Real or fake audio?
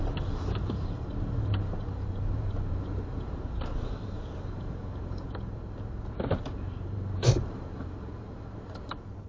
fake